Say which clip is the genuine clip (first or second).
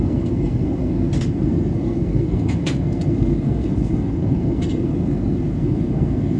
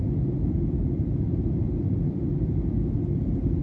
second